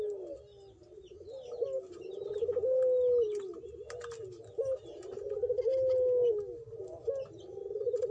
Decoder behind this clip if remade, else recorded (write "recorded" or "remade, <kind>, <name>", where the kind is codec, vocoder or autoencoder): recorded